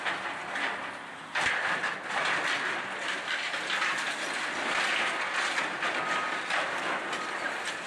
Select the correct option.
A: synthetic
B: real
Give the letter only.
B